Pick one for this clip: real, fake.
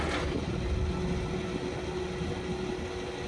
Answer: real